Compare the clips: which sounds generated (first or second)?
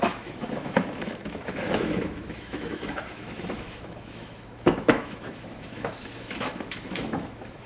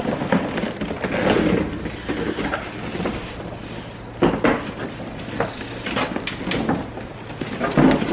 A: first